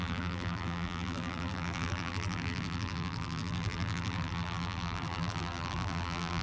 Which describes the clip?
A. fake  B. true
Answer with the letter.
A